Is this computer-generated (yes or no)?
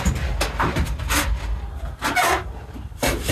no